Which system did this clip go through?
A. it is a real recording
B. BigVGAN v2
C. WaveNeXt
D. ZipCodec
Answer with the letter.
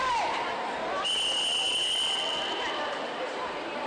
A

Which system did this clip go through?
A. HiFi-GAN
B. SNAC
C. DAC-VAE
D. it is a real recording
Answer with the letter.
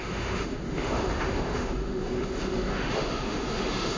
C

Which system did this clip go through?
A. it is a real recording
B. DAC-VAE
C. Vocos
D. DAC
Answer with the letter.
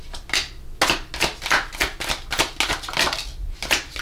A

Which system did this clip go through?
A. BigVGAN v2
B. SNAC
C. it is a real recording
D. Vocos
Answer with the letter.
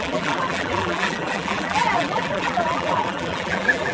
A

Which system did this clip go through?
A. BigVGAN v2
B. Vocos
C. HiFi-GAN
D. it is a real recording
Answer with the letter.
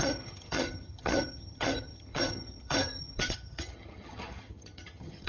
C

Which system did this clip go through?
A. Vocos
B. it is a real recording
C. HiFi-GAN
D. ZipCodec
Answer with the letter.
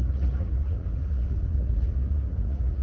A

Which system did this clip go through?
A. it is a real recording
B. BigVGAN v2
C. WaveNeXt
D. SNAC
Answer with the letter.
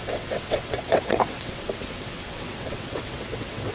C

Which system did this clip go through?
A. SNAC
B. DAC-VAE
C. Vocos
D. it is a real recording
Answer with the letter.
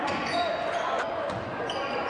C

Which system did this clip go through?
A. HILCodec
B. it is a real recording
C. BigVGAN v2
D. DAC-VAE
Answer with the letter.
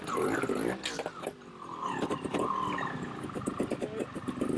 B